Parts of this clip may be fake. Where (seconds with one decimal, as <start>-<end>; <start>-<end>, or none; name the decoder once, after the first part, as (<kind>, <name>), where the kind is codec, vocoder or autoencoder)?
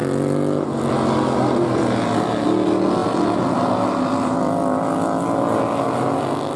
none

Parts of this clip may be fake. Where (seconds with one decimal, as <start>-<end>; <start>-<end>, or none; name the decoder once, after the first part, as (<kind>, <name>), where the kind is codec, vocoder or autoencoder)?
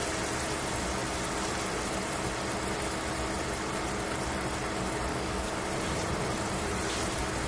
5.1-5.7 (codec, DAC)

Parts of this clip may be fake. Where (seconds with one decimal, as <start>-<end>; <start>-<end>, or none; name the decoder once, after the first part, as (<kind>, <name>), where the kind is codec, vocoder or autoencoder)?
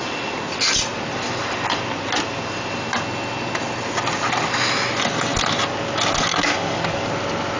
6.3-7.1 (codec, DAC)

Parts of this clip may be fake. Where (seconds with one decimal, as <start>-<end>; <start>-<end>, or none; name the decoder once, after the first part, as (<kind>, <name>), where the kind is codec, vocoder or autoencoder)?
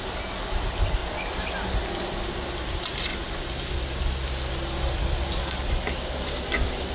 none